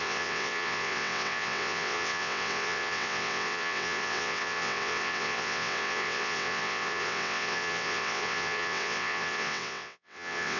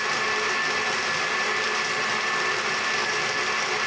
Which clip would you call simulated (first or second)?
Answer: first